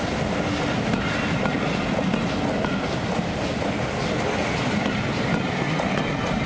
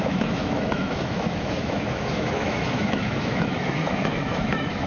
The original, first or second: first